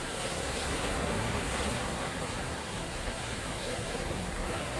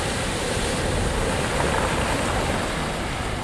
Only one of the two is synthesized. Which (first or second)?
first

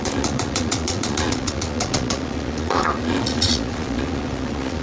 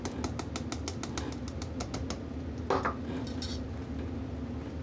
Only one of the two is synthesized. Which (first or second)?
first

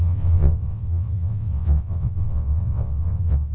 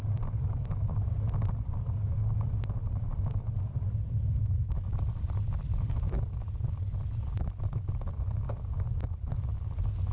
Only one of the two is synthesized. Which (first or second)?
first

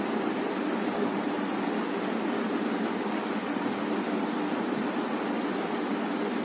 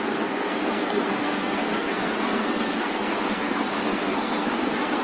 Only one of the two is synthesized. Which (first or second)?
second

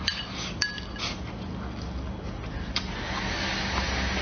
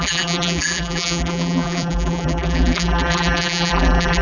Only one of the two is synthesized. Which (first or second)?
second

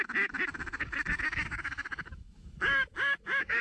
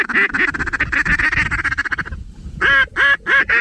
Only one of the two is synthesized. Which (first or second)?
first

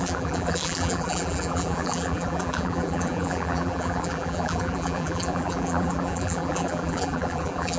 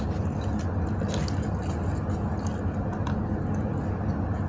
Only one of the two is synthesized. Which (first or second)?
first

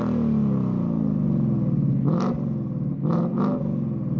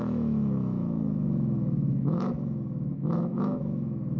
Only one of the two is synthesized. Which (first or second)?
second